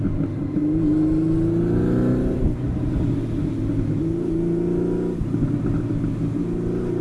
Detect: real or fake real